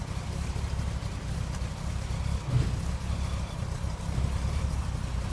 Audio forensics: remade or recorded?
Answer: recorded